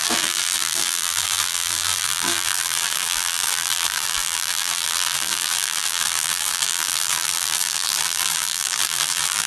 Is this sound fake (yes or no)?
yes